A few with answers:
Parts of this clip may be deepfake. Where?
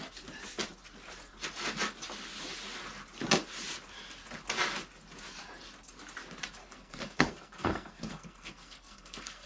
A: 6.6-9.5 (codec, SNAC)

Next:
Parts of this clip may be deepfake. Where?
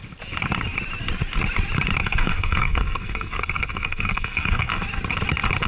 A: 2.0-4.7 (codec, SNAC)